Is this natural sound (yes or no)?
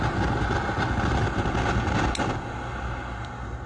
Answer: yes